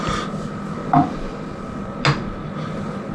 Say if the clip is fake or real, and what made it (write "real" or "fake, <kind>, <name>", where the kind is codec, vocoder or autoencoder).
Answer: real